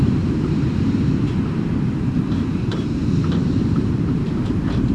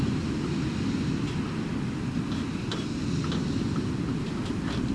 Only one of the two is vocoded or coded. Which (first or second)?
first